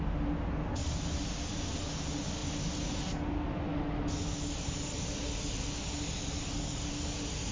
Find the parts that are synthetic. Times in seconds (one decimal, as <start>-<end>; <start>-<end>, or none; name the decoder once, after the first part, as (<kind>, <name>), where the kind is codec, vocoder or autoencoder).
none